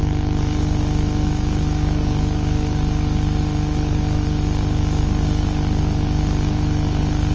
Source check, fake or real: fake